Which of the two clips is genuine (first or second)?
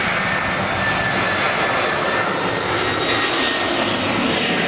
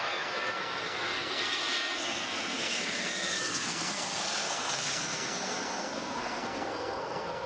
first